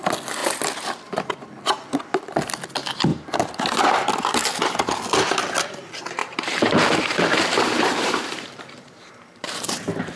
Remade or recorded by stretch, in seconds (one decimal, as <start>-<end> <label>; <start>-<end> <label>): 0.0-0.4 recorded; 0.4-1.3 remade; 1.3-3.1 recorded; 3.1-3.9 remade; 3.9-6.2 recorded; 6.2-10.2 remade